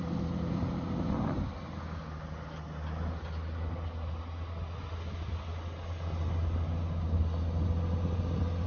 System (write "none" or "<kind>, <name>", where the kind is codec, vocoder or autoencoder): none